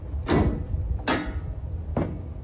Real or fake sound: real